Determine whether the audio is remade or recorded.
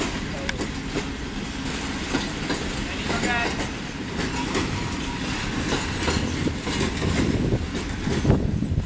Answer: recorded